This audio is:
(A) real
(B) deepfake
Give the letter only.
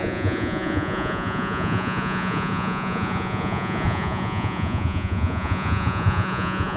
B